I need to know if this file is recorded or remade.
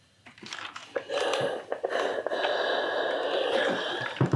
recorded